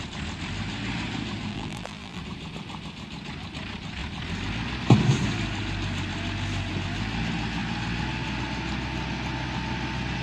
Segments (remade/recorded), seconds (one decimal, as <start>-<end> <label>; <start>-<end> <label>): 0.0-1.5 recorded; 1.5-2.2 remade; 2.2-10.2 recorded